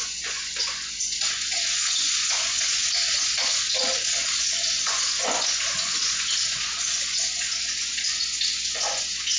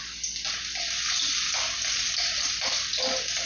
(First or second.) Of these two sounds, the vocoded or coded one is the first